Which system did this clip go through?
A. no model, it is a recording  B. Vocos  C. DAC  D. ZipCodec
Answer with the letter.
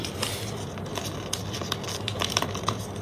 A